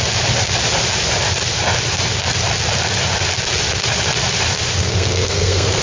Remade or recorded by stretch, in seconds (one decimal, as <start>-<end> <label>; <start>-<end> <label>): 0.0-4.8 recorded; 4.8-5.8 remade